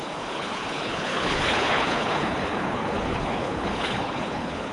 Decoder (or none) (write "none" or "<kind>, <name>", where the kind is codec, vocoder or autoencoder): codec, HILCodec